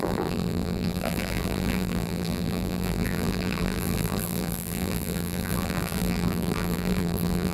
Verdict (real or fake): fake